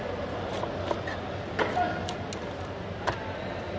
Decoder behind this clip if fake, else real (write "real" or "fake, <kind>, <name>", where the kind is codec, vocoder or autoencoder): real